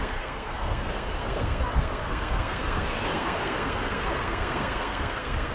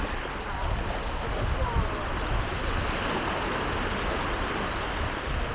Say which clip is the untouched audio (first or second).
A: second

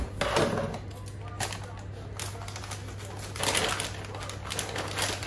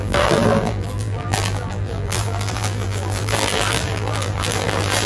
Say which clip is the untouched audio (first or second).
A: first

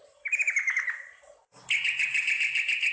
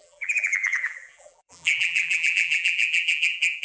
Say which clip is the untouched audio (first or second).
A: first